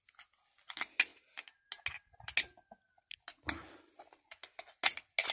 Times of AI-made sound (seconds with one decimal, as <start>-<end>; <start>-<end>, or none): none